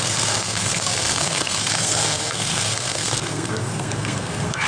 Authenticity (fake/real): fake